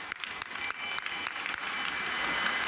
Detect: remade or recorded recorded